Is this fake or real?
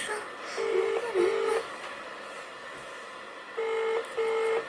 real